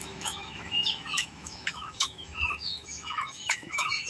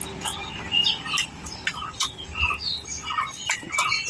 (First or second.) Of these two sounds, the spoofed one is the first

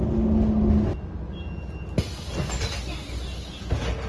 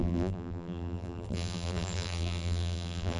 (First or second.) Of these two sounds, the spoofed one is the second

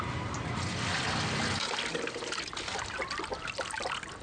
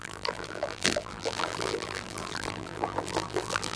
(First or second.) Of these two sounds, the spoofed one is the second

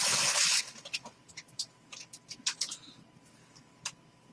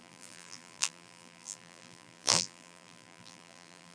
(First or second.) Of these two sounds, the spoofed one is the second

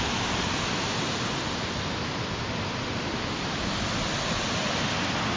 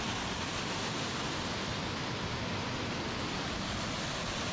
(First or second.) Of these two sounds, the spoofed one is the second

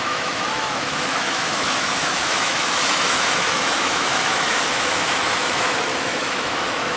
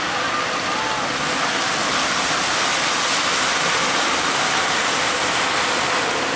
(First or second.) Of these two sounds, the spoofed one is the first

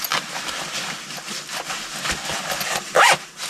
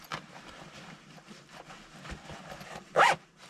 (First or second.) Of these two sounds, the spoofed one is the second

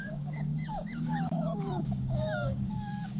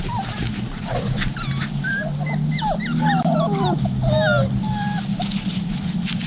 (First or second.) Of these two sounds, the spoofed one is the first